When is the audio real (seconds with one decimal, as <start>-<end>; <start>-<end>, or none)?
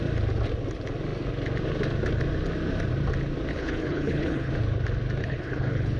0.0-3.5; 4.5-5.2